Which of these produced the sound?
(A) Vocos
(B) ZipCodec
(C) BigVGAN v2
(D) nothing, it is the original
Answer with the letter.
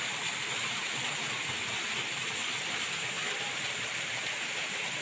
D